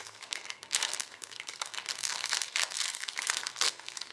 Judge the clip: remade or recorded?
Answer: remade